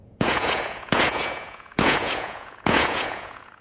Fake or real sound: fake